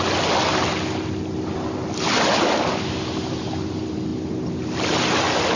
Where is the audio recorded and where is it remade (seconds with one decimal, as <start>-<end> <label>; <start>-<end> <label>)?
0.0-5.6 recorded